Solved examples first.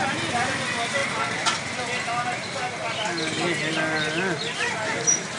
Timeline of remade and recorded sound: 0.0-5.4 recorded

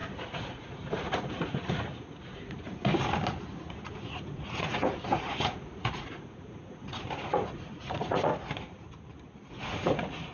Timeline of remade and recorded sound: 0.0-2.9 remade; 2.9-3.6 recorded; 3.6-8.3 remade; 8.3-9.5 recorded; 9.5-10.3 remade